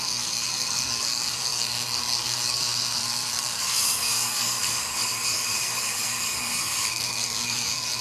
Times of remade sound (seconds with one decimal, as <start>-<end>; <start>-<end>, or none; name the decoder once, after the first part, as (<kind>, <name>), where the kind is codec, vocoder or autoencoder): 0.0-8.0 (codec, SNAC)